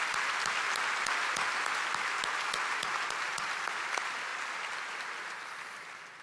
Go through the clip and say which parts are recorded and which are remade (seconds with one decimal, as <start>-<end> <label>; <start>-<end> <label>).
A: 0.0-0.4 remade; 0.4-3.1 recorded; 3.1-4.3 remade; 4.3-4.9 recorded; 4.9-6.2 remade